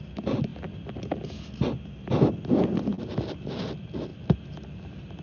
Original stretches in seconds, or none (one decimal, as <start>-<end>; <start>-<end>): 0.0-5.2